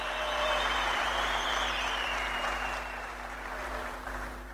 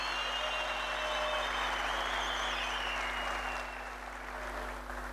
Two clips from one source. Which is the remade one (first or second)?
first